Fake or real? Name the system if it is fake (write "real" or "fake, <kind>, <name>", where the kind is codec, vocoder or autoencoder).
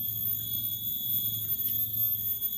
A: real